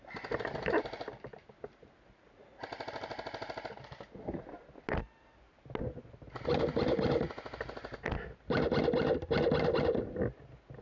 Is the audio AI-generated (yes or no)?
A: no